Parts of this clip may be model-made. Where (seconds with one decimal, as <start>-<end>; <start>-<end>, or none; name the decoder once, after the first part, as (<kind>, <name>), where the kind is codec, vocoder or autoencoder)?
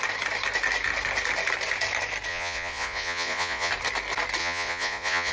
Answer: 2.3-3.7 (vocoder, Vocos); 4.4-5.3